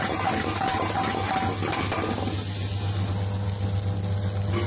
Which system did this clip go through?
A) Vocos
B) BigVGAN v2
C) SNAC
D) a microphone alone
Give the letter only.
D